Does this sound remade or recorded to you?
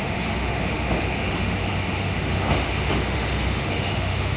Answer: remade